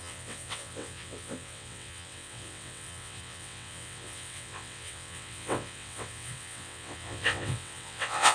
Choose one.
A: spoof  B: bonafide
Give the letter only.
A